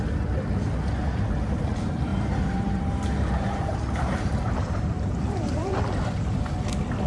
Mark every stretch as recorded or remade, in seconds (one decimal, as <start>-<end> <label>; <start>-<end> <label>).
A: 0.0-2.1 recorded; 2.1-6.4 remade; 6.4-7.1 recorded